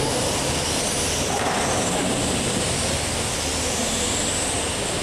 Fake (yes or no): no